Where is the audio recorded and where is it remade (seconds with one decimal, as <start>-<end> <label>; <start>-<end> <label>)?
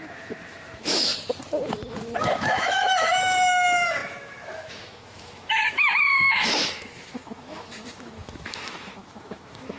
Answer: 0.0-1.1 remade; 1.1-2.2 recorded; 2.2-9.8 remade